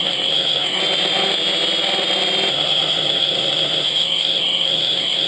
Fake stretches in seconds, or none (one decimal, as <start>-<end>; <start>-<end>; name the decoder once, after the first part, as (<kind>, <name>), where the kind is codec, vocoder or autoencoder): 0.0-0.8 (codec, SNAC); 2.5-5.3